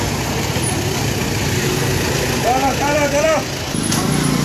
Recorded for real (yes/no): yes